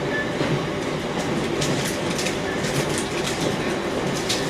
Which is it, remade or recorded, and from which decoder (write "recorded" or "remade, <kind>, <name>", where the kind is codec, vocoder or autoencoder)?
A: recorded